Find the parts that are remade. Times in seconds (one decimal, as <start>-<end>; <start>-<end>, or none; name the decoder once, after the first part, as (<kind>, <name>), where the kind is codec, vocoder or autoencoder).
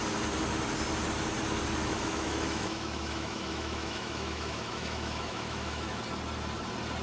1.8-6.0 (autoencoder, DAC-VAE)